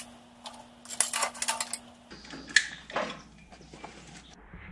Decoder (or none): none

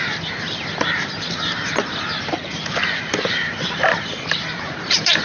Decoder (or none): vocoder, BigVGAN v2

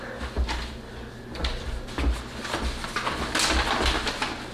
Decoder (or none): none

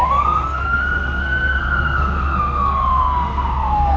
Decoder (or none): codec, SNAC